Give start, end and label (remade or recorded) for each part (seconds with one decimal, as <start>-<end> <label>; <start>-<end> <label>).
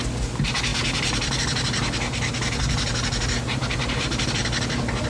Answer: 0.0-5.1 recorded